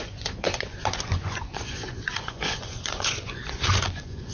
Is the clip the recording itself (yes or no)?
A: no